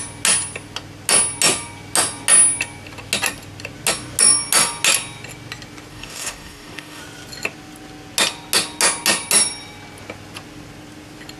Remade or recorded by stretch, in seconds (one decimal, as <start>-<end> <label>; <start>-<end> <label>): 0.0-5.9 recorded; 5.9-7.0 remade; 7.0-11.4 recorded